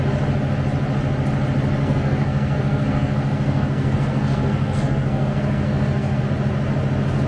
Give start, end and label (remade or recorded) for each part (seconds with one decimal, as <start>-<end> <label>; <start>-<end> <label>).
0.0-1.8 recorded; 1.8-6.2 remade; 6.2-7.3 recorded